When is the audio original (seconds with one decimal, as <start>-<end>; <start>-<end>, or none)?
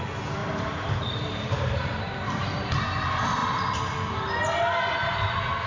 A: 0.0-0.4; 2.8-5.7